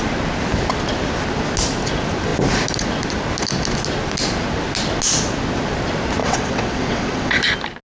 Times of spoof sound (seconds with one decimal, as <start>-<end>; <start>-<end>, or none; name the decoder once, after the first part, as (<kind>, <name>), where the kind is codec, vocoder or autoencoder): 6.2-7.4 (vocoder, WaveNeXt)